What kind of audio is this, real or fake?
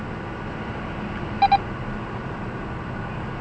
real